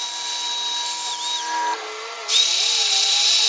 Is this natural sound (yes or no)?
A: yes